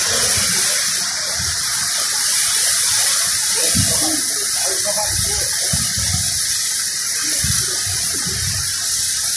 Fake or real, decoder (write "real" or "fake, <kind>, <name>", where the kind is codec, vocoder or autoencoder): real